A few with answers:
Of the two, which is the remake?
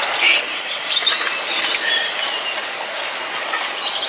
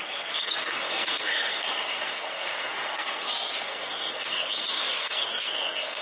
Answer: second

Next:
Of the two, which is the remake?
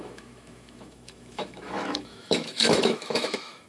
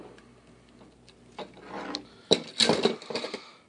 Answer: first